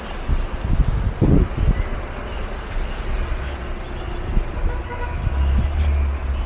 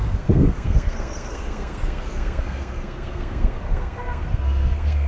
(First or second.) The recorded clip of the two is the first